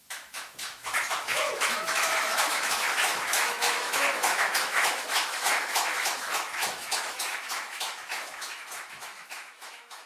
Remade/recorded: remade